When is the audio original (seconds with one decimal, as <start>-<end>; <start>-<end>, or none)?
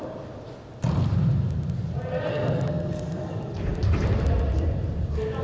0.0-2.3; 3.2-5.4